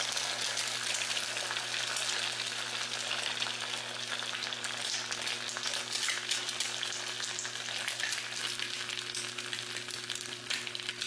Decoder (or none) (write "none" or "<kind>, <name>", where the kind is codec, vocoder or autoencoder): none